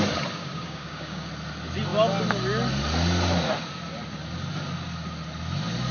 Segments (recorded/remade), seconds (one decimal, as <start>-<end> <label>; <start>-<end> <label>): 0.0-0.4 recorded; 0.4-1.3 remade; 1.3-5.9 recorded